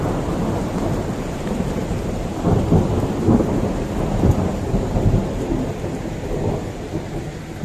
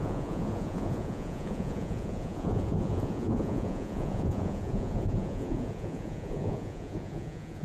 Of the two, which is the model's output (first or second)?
second